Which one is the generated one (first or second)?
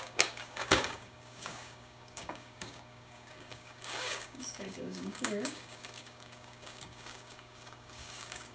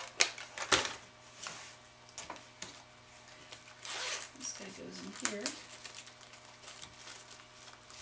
first